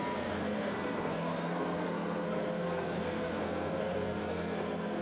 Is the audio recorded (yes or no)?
no